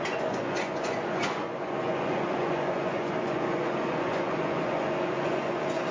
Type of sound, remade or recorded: remade